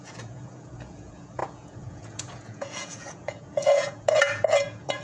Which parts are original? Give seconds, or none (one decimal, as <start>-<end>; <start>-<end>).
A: none